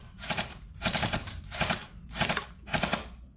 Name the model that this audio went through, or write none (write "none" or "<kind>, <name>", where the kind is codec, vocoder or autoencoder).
vocoder, BigVGAN v2